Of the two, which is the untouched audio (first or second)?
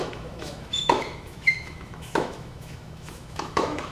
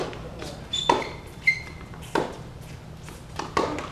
second